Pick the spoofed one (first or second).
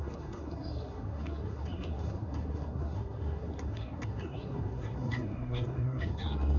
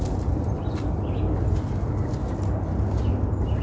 first